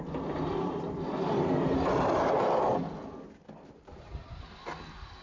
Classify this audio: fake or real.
real